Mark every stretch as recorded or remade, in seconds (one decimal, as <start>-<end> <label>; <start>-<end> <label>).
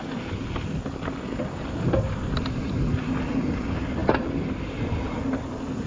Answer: 0.0-5.9 recorded